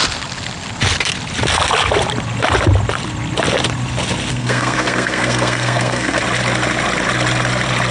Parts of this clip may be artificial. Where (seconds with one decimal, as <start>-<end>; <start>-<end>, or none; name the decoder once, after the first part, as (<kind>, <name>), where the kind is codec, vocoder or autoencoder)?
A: 4.3-6.2 (codec, SNAC)